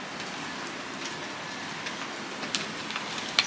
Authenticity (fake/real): real